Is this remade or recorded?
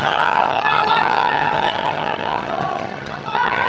remade